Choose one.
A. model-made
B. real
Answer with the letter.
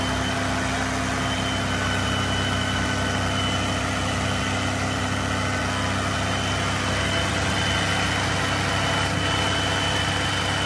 B